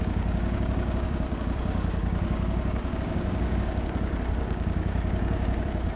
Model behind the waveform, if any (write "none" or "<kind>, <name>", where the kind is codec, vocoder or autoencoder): codec, DAC